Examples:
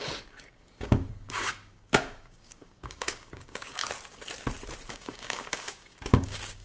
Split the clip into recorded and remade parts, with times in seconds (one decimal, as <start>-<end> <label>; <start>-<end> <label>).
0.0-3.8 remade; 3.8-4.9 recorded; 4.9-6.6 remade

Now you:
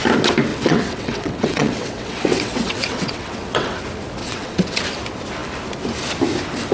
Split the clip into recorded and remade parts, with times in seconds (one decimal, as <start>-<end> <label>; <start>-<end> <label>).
0.0-0.5 recorded; 0.5-3.8 remade; 3.8-4.2 recorded; 4.2-4.8 remade; 4.8-6.7 recorded

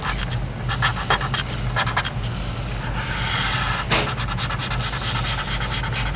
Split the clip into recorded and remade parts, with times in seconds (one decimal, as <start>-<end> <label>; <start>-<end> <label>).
0.0-6.2 recorded

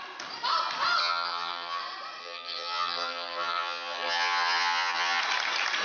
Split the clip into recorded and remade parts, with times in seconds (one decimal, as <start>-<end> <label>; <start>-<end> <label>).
0.0-1.0 recorded; 1.0-1.8 remade; 1.8-2.2 recorded; 2.2-5.2 remade; 5.2-5.8 recorded

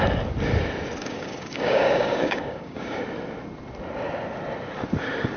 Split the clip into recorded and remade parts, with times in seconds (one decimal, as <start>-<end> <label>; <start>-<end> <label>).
0.0-1.0 recorded; 1.0-3.0 remade; 3.0-5.4 recorded